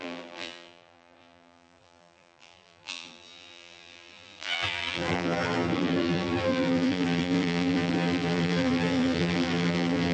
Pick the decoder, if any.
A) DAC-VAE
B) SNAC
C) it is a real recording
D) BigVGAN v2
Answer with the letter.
D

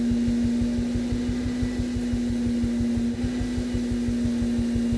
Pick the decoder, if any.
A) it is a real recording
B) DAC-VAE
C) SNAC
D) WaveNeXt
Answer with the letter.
A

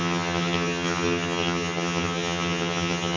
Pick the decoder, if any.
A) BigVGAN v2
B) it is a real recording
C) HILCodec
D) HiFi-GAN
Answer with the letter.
D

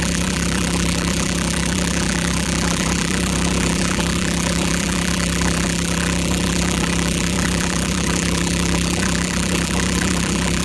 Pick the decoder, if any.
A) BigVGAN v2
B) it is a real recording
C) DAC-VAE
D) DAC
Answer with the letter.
A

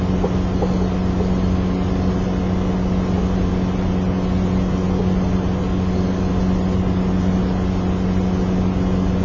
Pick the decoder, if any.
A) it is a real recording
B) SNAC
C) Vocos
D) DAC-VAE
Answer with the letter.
A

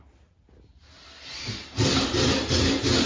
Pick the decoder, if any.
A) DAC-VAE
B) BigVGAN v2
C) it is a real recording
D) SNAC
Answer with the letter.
C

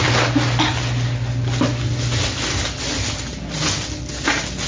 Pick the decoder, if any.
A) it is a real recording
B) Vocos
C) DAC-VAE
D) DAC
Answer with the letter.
A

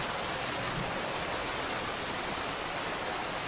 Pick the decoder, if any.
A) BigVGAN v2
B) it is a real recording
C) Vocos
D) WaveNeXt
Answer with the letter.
B